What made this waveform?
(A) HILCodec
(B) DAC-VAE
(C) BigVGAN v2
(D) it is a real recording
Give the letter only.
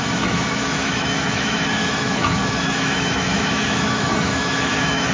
B